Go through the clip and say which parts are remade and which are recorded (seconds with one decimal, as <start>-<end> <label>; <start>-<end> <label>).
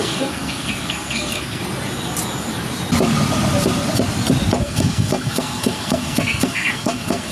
0.0-1.6 remade; 1.6-4.6 recorded; 4.6-7.3 remade